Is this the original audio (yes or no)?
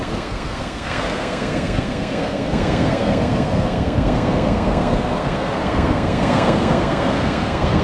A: no